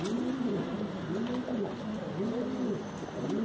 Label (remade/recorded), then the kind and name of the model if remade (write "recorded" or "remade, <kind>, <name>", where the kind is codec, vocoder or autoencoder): recorded